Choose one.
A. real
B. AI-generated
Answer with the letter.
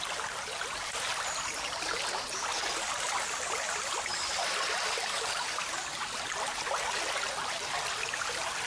A